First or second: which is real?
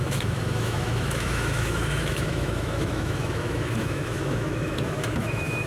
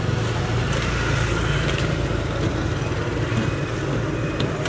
second